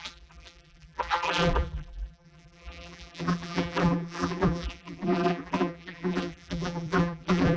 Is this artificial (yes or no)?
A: yes